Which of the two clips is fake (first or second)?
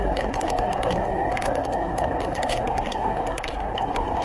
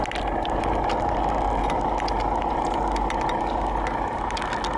first